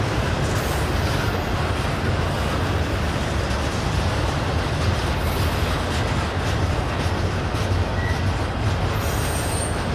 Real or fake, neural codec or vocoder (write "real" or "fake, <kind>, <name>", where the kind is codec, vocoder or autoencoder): real